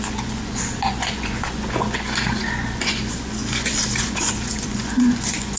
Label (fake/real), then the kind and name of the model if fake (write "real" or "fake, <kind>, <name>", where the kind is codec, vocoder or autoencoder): fake, vocoder, Vocos